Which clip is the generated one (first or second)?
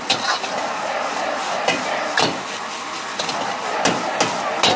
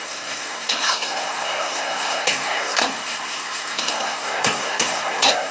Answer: second